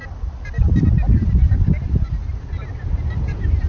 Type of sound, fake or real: real